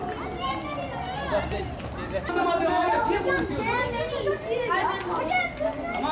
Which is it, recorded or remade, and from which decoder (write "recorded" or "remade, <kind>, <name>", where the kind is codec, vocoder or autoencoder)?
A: recorded